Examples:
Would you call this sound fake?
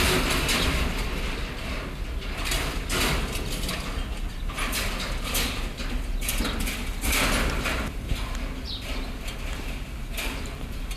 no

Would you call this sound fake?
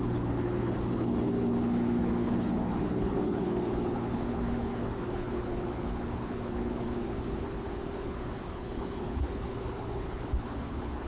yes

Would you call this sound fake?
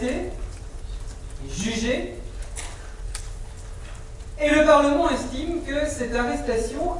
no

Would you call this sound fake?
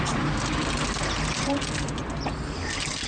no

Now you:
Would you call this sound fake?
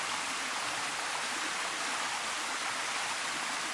no